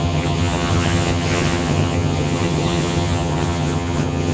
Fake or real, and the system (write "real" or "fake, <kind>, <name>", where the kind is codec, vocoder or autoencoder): fake, vocoder, HiFi-GAN